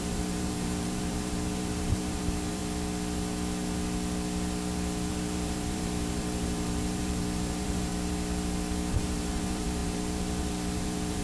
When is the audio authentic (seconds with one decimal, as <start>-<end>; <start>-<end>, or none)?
2.6-5.1; 7.9-8.9